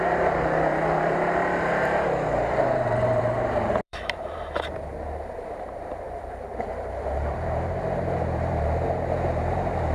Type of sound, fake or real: fake